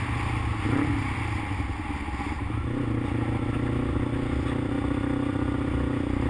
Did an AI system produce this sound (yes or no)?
no